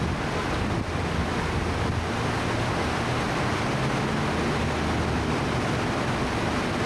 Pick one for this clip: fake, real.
real